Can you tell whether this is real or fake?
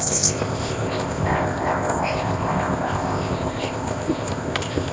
fake